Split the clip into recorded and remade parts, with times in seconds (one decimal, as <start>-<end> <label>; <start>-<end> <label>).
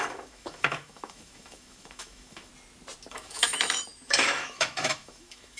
0.0-2.5 remade; 2.5-3.1 recorded; 3.1-5.6 remade